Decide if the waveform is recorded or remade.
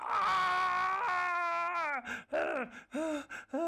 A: recorded